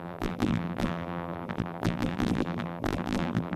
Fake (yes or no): yes